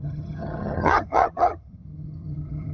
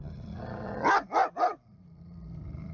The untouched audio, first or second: second